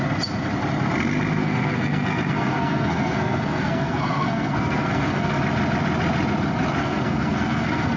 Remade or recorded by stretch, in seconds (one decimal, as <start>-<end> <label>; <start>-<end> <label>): 0.0-1.4 recorded; 1.4-5.4 remade; 5.4-6.8 recorded; 6.8-8.0 remade